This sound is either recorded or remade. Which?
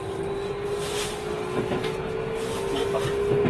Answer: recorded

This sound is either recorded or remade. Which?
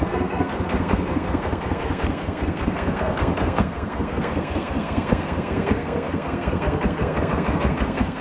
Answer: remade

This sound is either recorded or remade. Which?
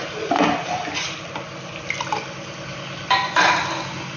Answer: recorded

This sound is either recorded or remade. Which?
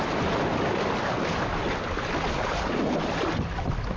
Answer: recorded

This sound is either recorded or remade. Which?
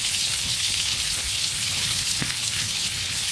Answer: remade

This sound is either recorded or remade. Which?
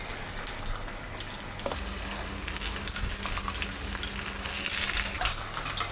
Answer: recorded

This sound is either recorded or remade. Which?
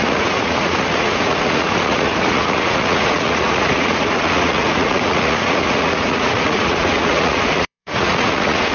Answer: remade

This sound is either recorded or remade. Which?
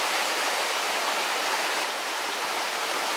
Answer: recorded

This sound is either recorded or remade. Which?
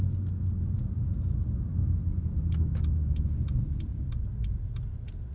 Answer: recorded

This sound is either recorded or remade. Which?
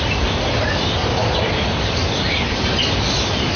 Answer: remade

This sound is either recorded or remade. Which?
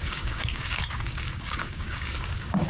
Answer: remade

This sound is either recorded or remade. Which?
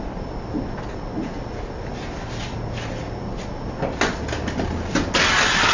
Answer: recorded